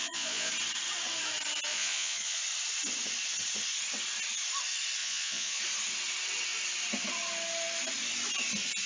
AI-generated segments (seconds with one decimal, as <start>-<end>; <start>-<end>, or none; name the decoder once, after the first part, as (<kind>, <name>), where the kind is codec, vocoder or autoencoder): 0.0-0.5 (vocoder, Vocos); 1.7-2.4; 5.0-5.6